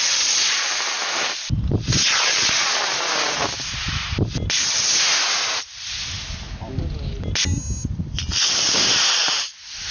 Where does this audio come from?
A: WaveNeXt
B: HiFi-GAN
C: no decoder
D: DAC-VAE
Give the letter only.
C